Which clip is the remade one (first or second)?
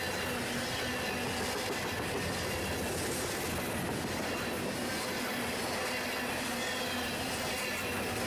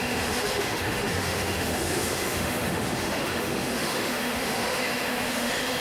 second